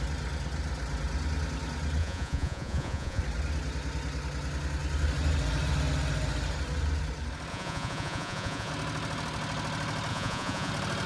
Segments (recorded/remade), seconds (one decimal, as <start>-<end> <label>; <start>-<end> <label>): 0.0-2.0 recorded; 2.0-3.2 remade; 3.2-7.5 recorded; 7.5-8.7 remade; 8.7-10.1 recorded; 10.1-10.7 remade; 10.7-11.1 recorded